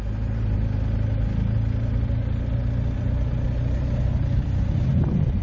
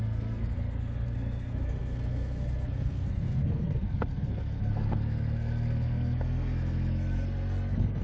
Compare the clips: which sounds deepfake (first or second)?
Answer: second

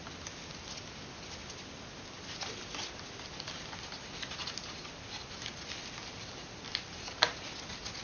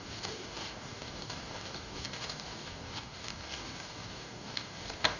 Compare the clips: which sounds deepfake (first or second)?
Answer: second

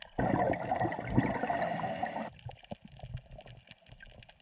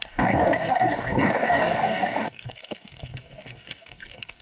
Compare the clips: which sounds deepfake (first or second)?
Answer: second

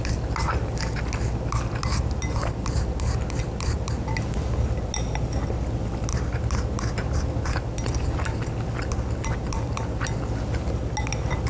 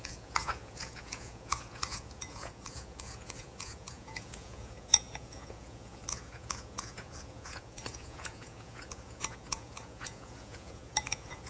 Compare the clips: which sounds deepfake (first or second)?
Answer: second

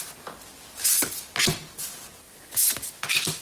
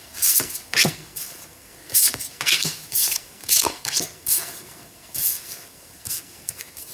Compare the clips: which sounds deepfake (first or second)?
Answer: second